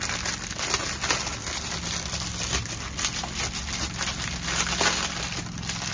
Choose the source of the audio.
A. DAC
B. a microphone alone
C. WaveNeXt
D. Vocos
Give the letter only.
B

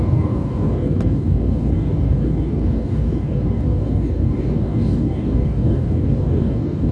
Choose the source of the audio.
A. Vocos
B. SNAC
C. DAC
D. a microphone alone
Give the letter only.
C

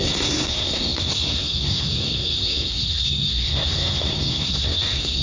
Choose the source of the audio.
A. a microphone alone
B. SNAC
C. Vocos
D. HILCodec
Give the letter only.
B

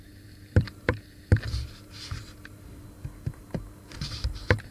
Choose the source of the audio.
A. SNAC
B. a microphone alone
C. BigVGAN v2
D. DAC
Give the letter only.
C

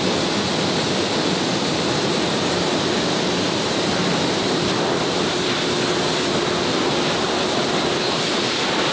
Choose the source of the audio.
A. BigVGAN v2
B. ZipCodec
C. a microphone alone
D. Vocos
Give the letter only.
A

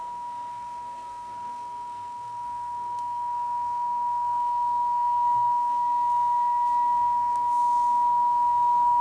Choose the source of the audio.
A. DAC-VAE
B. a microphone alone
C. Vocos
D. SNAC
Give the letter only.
D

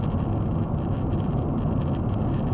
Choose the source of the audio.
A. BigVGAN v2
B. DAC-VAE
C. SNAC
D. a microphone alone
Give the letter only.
D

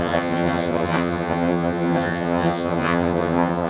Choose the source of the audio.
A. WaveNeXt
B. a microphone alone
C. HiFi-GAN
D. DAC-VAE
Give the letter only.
C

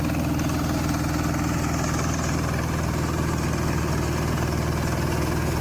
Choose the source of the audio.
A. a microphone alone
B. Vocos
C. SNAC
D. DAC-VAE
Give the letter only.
A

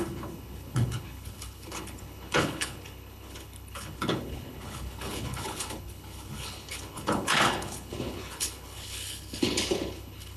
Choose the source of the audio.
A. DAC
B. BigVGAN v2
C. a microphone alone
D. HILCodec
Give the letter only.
D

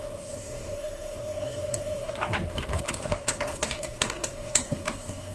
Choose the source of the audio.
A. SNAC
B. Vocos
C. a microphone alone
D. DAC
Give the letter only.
A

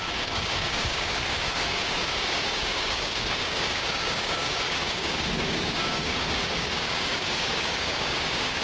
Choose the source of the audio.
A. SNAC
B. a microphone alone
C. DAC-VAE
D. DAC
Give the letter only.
D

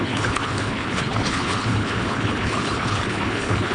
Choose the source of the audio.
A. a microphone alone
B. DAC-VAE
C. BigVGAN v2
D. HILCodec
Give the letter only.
D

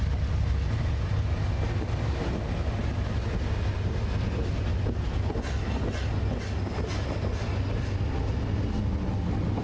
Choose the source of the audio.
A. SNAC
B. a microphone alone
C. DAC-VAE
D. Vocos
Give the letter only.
B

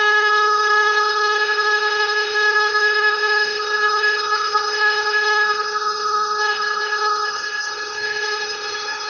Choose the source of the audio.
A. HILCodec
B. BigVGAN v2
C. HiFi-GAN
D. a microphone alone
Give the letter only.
A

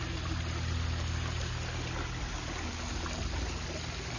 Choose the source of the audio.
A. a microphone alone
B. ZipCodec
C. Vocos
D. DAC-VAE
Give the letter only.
A